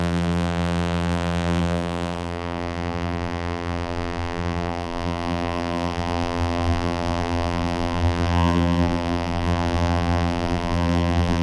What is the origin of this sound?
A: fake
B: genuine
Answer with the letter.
A